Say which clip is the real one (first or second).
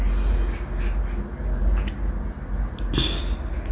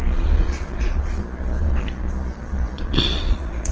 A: first